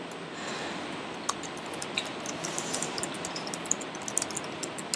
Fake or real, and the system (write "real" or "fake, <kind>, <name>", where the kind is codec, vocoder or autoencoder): real